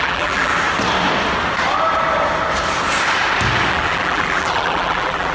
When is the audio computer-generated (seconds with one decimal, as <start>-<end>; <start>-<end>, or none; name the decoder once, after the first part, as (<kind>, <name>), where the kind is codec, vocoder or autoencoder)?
0.0-0.5 (vocoder, BigVGAN v2); 3.7-5.3